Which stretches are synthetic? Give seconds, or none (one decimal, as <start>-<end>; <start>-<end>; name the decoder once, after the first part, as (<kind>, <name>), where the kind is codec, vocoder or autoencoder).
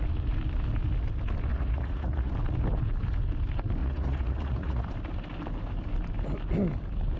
1.5-2.3 (vocoder, Vocos); 3.8-4.9